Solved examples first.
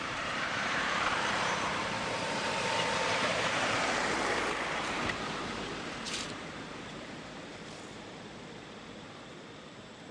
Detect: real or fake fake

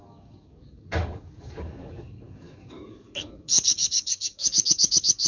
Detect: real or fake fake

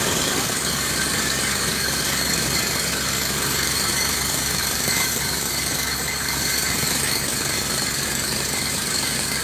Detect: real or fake fake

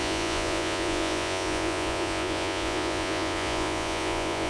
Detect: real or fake fake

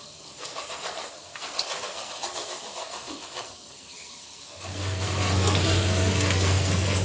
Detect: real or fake fake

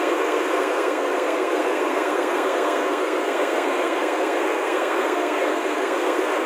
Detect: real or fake fake